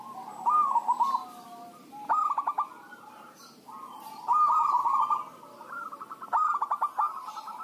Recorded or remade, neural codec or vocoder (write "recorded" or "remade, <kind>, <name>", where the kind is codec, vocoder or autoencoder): recorded